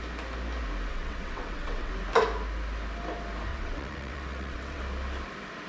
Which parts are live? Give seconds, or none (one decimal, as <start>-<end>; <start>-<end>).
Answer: 0.0-0.9; 1.9-3.5; 4.8-5.7